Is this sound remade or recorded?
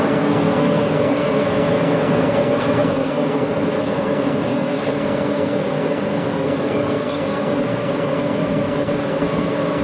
remade